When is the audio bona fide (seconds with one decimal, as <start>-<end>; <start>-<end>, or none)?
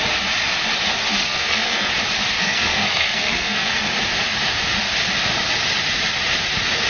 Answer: 0.0-1.1; 1.9-2.4; 3.9-6.9